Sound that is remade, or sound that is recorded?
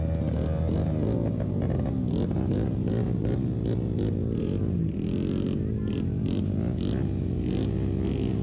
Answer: recorded